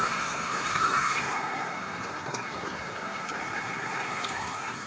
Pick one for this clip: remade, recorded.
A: remade